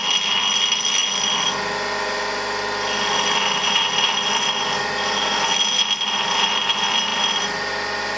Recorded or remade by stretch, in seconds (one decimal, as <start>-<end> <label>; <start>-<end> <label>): 0.0-8.2 recorded